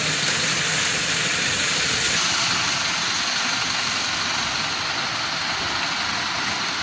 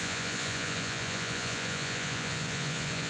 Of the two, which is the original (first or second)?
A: first